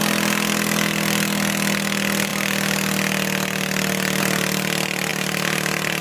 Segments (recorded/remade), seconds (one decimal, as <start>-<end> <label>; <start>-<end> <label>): 0.0-6.0 recorded